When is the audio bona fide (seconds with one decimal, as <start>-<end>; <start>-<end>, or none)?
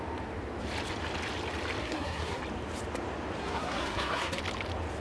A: 0.0-1.8; 2.4-3.4; 4.4-5.0